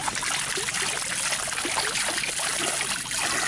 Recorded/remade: recorded